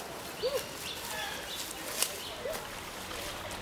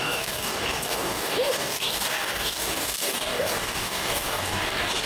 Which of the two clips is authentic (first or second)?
first